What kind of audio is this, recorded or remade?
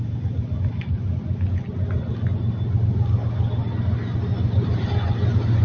recorded